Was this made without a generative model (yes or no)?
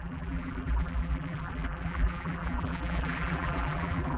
no